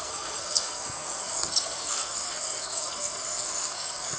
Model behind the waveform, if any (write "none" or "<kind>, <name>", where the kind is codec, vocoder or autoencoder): codec, SNAC